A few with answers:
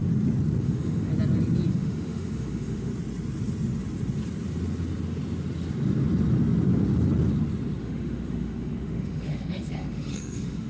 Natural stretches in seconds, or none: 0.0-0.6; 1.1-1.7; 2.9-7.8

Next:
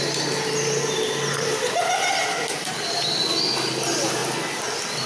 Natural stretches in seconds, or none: 0.0-5.1

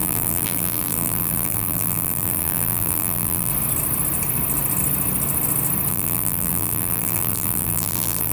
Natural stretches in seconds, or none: 3.5-5.9

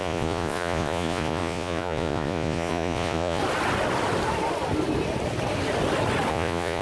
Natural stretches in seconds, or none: 3.4-6.3

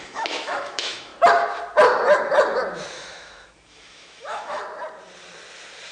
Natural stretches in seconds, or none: 1.1-2.9; 4.6-5.9

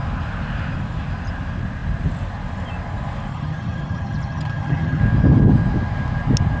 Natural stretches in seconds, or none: 0.0-3.3; 5.0-6.6